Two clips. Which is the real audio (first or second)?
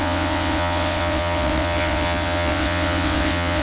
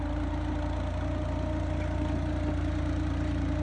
second